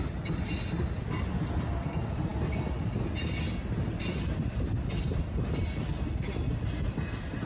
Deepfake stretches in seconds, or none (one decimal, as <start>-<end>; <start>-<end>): none